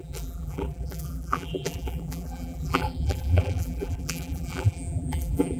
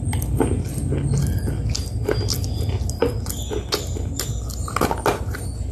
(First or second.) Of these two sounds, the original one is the second